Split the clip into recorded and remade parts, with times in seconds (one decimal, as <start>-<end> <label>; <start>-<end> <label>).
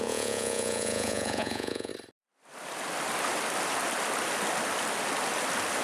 0.0-1.9 remade; 1.9-5.8 recorded